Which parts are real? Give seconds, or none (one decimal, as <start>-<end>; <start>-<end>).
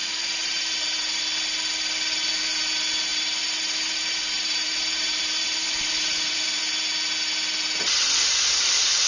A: 1.2-3.1; 6.6-9.1